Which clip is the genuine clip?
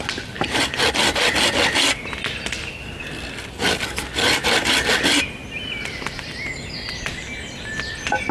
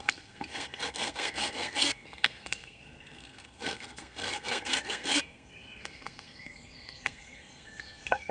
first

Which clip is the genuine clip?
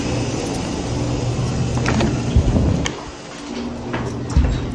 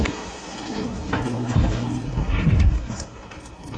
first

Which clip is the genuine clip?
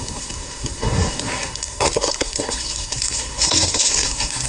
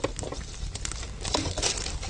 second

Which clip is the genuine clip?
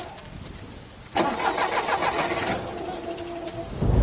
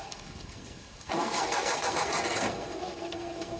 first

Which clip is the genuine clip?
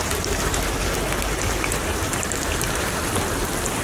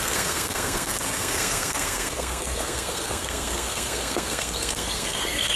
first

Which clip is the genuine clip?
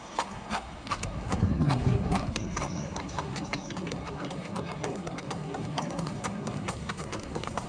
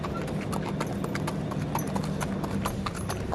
second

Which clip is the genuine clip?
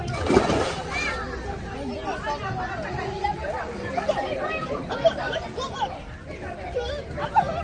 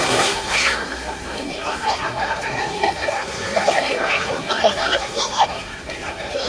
first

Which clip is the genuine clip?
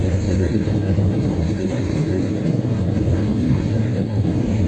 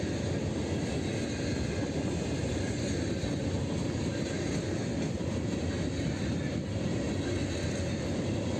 second